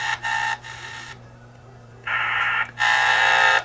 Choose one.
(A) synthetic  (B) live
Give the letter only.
A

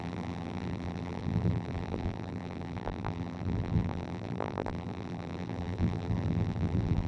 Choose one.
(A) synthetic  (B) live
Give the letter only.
A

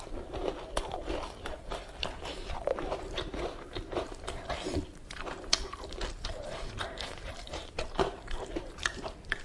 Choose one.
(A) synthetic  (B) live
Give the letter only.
A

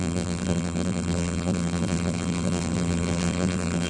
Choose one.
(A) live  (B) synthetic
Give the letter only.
B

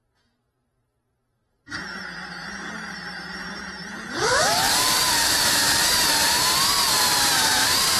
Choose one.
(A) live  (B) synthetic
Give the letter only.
B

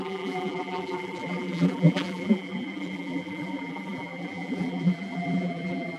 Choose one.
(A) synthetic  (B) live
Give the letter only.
A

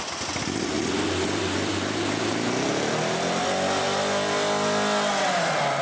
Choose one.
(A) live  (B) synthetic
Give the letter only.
A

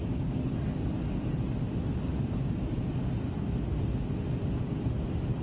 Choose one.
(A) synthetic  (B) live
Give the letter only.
A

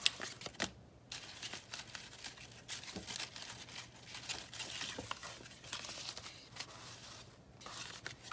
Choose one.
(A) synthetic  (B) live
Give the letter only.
B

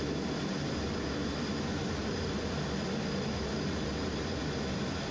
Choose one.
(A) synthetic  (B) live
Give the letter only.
B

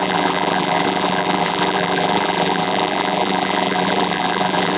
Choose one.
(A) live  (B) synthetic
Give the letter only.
B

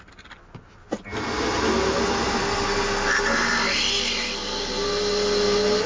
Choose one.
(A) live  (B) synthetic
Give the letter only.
A